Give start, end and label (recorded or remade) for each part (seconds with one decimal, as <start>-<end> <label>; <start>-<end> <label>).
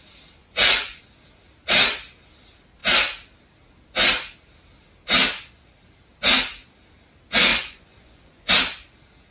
0.0-0.4 recorded; 0.4-1.0 remade; 1.0-7.5 recorded; 7.5-8.5 remade; 8.5-9.3 recorded